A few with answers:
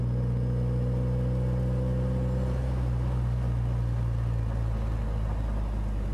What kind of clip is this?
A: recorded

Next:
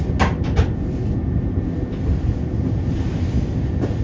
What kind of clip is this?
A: recorded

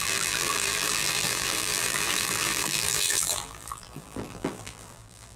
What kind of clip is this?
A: remade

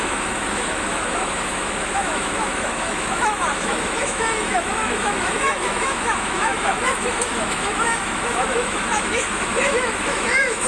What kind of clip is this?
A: remade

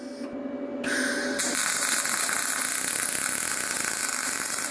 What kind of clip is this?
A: recorded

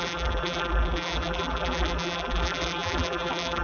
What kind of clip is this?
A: remade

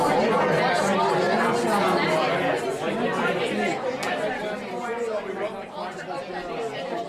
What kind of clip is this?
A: recorded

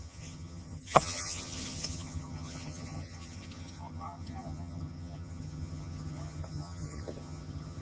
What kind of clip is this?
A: remade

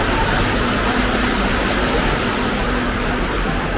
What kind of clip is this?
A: recorded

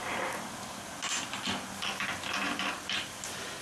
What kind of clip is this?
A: recorded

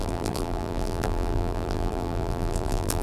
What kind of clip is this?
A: remade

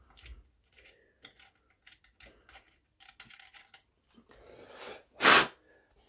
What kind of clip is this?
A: recorded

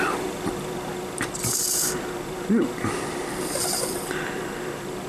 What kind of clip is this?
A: remade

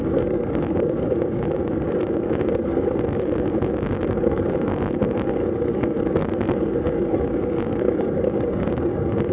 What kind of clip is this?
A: remade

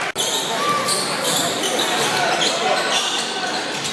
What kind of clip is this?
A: recorded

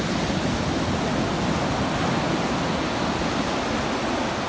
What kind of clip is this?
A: recorded